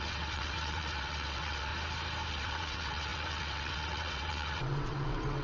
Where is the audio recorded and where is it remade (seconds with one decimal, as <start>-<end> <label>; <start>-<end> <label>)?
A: 0.0-1.7 remade; 1.7-2.3 recorded; 2.3-5.4 remade